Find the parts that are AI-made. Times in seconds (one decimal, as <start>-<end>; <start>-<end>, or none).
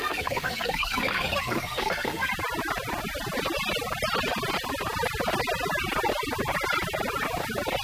0.0-2.3